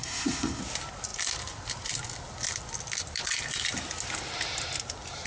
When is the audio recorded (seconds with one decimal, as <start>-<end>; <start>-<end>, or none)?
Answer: 0.6-5.3